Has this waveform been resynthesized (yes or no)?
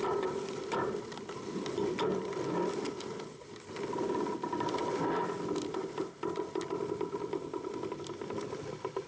no